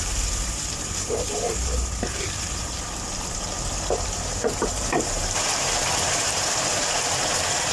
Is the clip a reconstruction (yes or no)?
yes